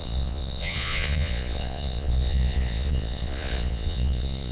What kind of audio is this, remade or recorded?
remade